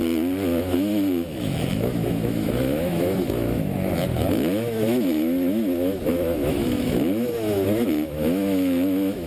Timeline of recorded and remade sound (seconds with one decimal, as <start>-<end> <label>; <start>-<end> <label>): 0.0-0.6 recorded; 0.6-9.3 remade